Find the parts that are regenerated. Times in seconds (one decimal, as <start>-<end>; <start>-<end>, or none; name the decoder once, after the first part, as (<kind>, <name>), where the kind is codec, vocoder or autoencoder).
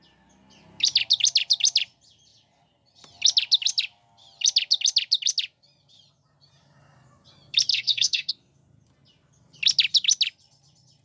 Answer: 7.7-8.3 (codec, SNAC)